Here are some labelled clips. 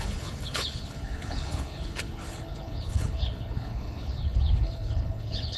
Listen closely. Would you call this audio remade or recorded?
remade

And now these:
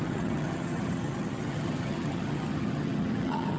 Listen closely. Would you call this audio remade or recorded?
remade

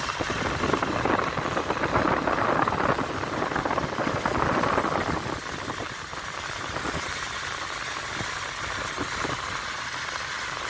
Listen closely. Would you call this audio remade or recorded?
recorded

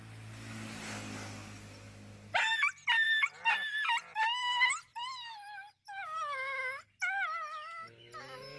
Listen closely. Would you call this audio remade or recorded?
recorded